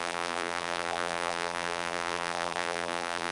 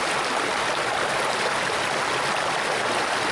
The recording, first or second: second